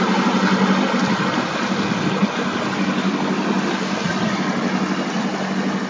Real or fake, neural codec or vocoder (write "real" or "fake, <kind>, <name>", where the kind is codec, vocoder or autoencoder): real